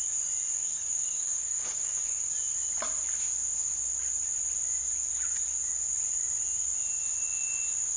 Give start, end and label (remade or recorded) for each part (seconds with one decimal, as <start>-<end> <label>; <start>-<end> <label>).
0.0-0.6 recorded; 0.6-2.3 remade; 2.3-8.0 recorded